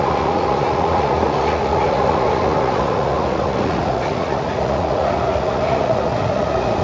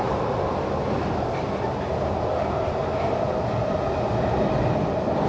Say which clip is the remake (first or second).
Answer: first